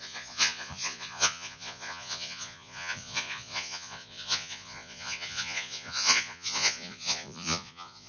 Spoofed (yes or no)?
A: yes